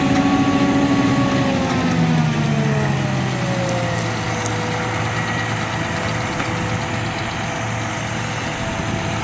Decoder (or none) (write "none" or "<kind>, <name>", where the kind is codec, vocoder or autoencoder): none